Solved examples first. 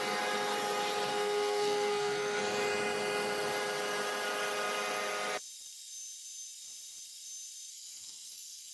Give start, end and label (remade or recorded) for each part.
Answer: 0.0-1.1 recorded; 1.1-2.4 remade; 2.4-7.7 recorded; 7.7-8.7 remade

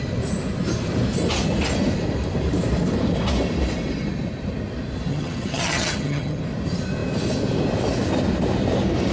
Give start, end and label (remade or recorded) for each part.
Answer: 0.0-5.1 recorded; 5.1-6.4 remade; 6.4-9.1 recorded

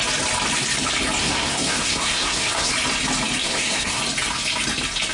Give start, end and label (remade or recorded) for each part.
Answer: 0.0-1.2 recorded; 1.2-2.7 remade; 2.7-3.4 recorded; 3.4-4.0 remade; 4.0-5.1 recorded

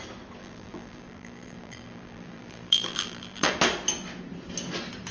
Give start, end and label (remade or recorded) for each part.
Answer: 0.0-0.4 recorded; 0.4-3.5 remade; 3.5-5.1 recorded